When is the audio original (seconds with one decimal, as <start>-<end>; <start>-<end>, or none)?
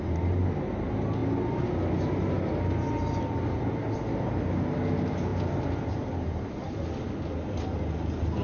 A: 0.0-8.4